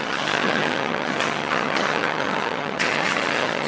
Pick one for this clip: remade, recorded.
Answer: remade